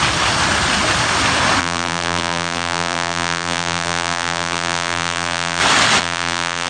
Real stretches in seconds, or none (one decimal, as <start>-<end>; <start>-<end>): 0.0-1.6; 5.6-6.0